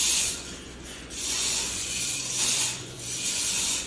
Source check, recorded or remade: remade